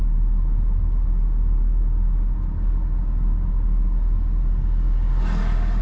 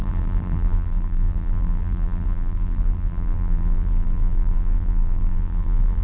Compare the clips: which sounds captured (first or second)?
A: first